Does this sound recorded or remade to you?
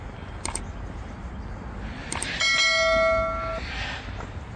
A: recorded